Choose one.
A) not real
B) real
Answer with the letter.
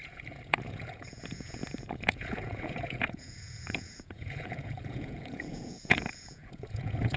A